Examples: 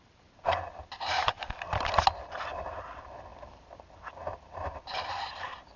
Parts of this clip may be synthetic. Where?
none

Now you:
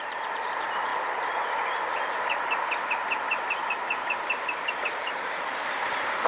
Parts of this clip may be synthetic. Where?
0.0-0.9; 4.7-6.3

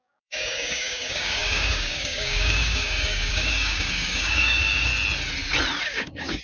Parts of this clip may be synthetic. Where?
0.0-4.9; 5.8-6.4

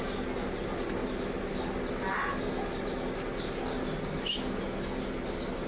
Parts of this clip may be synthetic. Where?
none

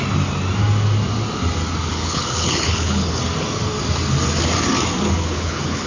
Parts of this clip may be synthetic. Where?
1.9-3.2; 5.2-5.9

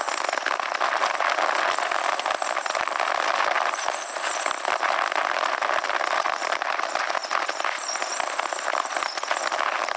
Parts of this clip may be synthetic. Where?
none

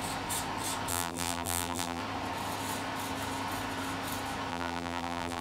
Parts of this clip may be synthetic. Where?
0.9-2.0; 4.5-5.4